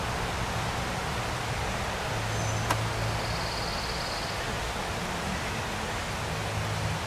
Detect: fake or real real